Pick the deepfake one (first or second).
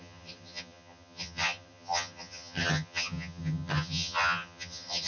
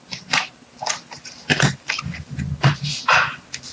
first